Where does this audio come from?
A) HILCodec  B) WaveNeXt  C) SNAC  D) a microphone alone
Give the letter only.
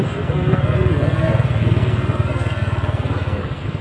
C